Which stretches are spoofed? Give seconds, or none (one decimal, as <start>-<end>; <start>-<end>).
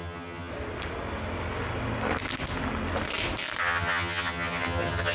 0.0-0.5; 3.6-5.1